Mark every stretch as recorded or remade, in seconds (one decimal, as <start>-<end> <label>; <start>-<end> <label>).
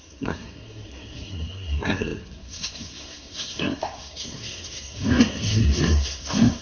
0.0-6.6 remade